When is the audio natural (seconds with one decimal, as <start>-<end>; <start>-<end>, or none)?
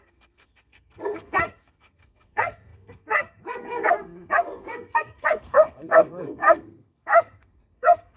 none